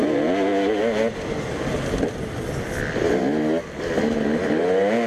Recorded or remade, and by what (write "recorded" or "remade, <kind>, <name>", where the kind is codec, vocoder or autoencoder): recorded